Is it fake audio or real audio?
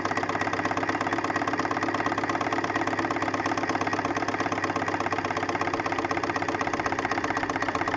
real